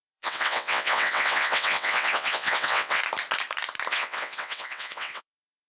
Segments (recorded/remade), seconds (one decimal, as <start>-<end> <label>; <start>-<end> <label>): 0.0-3.0 remade; 3.0-3.9 recorded; 3.9-5.7 remade